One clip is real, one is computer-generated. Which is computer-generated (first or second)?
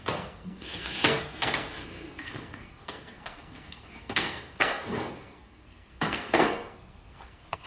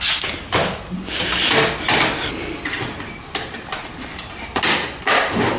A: first